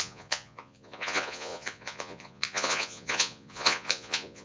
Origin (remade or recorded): remade